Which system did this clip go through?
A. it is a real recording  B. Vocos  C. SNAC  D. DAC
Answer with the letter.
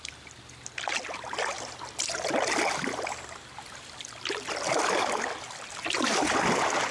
A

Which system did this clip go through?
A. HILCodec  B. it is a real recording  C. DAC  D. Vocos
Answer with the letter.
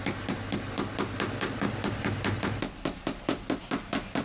B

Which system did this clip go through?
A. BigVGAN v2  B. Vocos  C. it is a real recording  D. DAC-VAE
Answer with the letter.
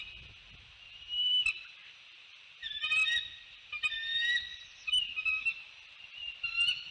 C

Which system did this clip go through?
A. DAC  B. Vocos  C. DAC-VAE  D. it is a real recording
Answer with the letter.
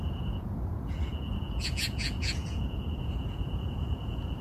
B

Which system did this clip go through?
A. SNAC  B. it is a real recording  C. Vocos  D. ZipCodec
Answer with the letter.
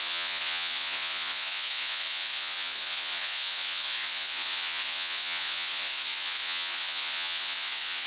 C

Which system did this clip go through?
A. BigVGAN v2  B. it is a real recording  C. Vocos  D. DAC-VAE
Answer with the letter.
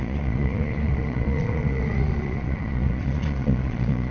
C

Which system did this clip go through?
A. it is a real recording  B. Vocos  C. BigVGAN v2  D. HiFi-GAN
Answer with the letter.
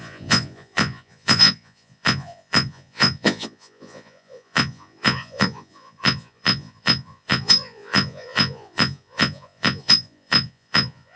B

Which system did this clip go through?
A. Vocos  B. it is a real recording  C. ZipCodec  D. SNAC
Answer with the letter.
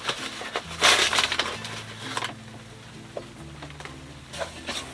B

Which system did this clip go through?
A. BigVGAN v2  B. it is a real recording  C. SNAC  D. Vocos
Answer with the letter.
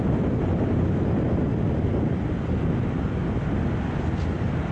B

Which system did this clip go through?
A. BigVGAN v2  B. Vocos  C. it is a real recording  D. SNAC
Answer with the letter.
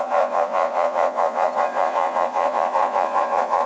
B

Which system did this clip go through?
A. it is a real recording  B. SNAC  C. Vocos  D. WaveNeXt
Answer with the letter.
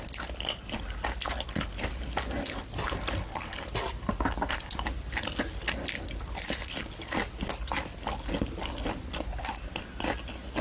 A